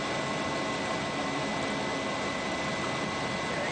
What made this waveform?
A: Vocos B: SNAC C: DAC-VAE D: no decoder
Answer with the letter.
D